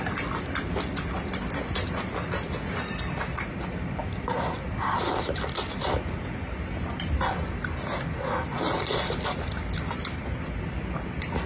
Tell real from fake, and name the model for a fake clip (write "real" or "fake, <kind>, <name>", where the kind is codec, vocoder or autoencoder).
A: real